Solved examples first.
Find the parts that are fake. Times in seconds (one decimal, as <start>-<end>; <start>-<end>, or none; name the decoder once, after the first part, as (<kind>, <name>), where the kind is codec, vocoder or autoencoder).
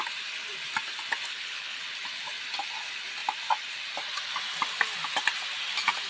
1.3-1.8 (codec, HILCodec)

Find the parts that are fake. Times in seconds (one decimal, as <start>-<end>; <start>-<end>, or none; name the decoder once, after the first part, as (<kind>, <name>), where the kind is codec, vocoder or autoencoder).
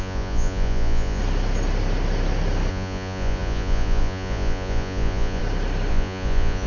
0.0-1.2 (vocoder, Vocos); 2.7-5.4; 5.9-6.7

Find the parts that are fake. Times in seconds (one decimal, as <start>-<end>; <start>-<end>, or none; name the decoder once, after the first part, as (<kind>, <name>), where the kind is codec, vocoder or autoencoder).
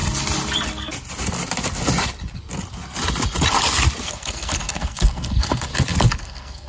4.0-5.7 (codec, SNAC); 6.2-6.7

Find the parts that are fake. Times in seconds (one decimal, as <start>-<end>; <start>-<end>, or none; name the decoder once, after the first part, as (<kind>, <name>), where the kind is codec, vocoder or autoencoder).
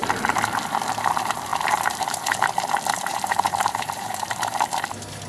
1.5-2.5 (vocoder, BigVGAN v2); 3.1-4.7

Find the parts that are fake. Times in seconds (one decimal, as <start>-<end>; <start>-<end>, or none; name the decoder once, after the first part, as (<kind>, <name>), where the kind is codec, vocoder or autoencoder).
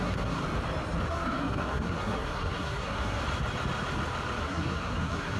0.0-0.4 (codec, SNAC); 1.1-3.2; 4.4-5.4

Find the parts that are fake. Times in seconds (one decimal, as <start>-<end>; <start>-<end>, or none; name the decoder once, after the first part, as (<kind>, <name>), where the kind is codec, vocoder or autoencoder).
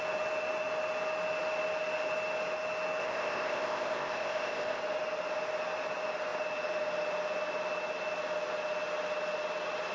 3.0-4.8 (codec, ZipCodec)